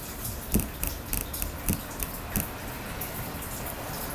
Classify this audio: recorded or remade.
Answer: recorded